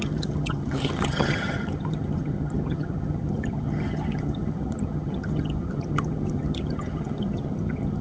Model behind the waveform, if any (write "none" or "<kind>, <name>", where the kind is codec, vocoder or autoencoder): vocoder, HiFi-GAN